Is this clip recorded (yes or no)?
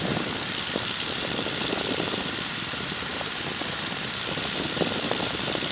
no